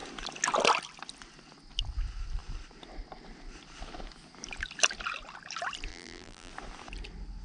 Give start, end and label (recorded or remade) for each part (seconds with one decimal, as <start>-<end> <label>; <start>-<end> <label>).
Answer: 0.0-5.9 recorded; 5.9-6.5 remade; 6.5-7.4 recorded